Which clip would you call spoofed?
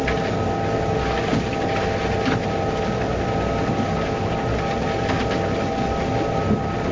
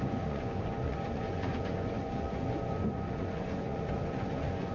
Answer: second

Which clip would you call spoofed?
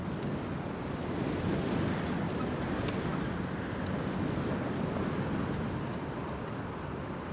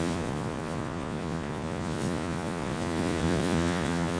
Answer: second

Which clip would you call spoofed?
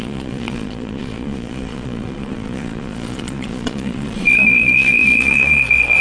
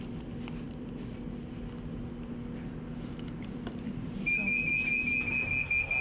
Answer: first